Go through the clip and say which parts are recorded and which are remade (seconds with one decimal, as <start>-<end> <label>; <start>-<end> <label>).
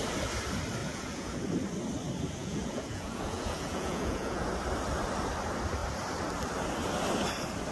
0.0-0.8 recorded; 0.8-1.4 remade; 1.4-2.4 recorded; 2.4-4.5 remade; 4.5-7.7 recorded